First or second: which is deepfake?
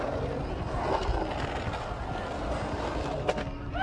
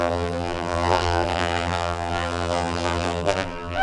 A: second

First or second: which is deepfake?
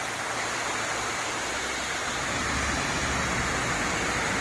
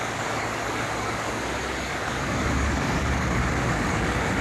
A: second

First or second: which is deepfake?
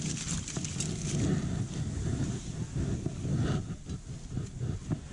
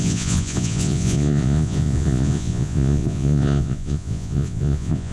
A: second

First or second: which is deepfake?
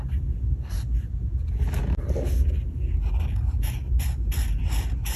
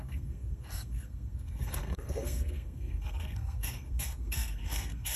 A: second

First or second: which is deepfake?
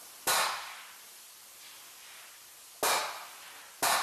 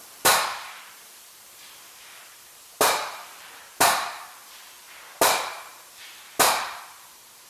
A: second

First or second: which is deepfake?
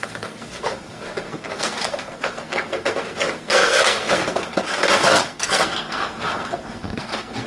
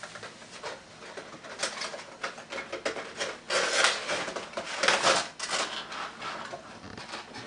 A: first